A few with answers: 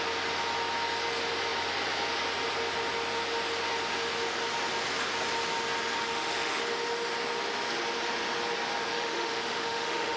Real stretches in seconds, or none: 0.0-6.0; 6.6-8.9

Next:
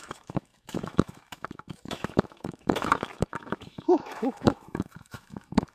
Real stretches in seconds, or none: none

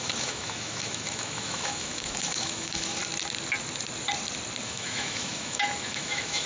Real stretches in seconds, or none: 3.0-4.6

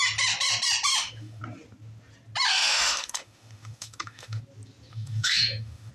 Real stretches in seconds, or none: 0.0-0.9; 1.4-2.5; 4.4-4.9

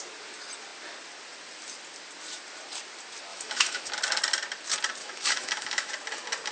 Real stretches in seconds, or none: 0.0-3.3; 3.9-5.0; 5.9-6.5

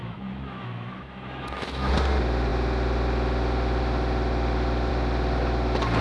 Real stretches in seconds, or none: 1.9-6.0

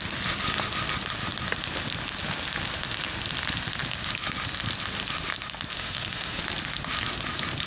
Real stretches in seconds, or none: 0.0-5.7; 6.4-7.7

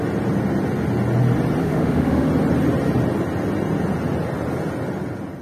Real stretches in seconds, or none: 0.0-1.6; 2.3-5.4